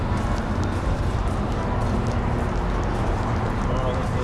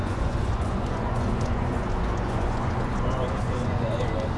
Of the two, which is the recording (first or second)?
first